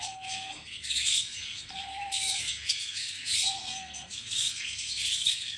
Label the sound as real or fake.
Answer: fake